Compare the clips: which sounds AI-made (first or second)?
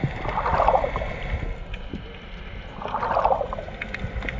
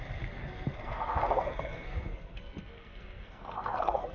second